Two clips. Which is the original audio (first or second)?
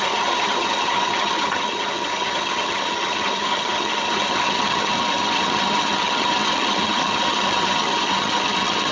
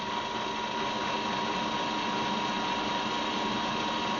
second